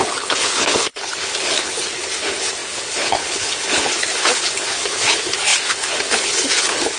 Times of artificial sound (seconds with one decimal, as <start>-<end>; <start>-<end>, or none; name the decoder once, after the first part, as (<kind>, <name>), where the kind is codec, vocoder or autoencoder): 0.0-7.0 (codec, HILCodec)